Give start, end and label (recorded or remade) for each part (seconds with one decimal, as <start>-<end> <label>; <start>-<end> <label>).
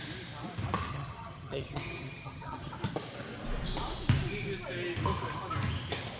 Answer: 0.0-0.9 recorded; 0.9-2.7 remade; 2.7-6.2 recorded